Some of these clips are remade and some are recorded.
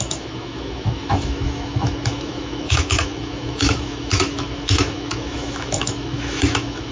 remade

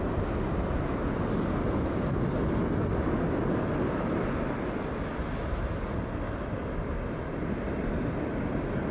recorded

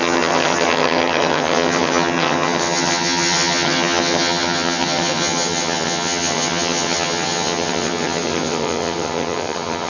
remade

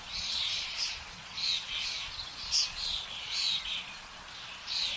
remade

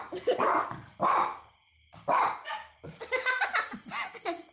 recorded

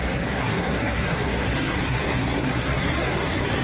remade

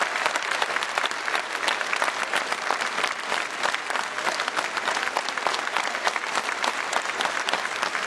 recorded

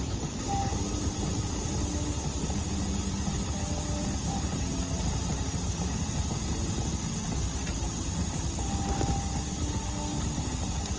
recorded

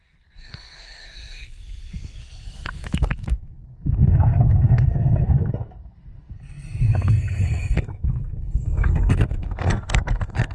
remade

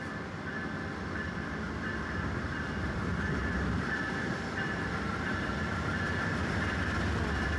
remade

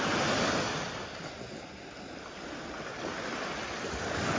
recorded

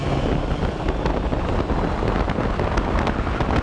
recorded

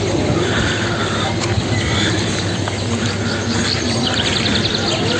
recorded